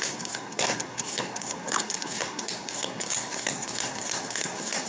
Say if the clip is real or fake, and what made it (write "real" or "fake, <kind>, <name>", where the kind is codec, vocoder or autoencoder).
fake, codec, SNAC